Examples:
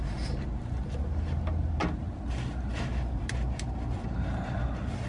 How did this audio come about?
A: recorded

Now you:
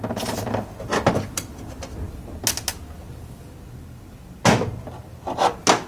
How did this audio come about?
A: recorded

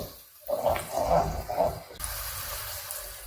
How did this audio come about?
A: recorded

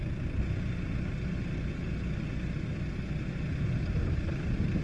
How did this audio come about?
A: recorded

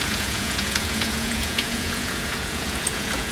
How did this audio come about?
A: remade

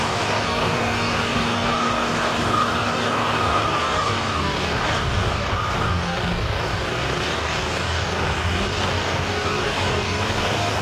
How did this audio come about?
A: remade